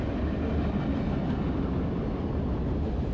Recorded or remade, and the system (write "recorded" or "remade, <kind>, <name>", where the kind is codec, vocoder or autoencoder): recorded